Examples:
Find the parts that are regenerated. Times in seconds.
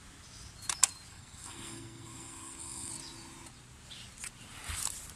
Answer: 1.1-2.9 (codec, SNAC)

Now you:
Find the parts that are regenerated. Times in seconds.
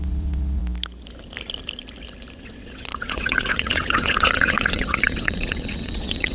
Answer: 0.0-0.6 (vocoder, WaveNeXt); 2.4-6.3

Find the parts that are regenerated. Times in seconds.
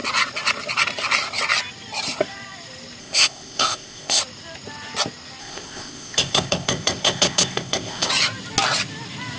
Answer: 3.0-4.2 (codec, ZipCodec); 5.4-8.1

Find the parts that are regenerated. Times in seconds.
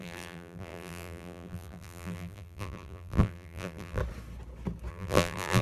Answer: 0.0-4.0 (vocoder, BigVGAN v2); 4.9-5.6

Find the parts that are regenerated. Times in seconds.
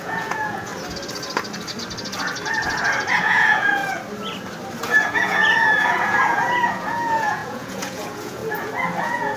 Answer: 0.0-0.7 (vocoder, Vocos); 3.2-3.8; 4.8-8.4; 9.0-9.4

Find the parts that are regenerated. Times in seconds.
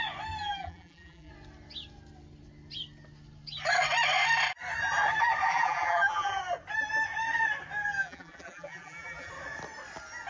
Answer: 0.4-1.3 (vocoder, BigVGAN v2); 5.5-6.4; 8.0-9.3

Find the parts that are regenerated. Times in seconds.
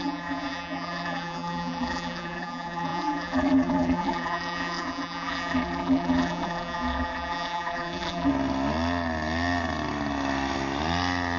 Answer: 0.0-8.3 (vocoder, BigVGAN v2)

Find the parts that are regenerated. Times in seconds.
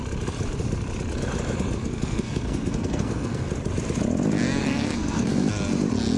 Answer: 1.8-3.5 (codec, SNAC); 4.6-5.5